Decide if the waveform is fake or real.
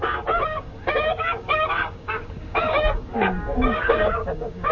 fake